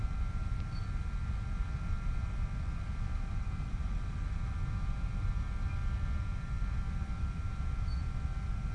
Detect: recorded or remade recorded